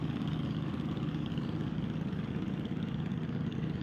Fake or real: fake